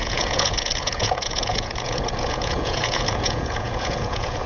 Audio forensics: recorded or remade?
remade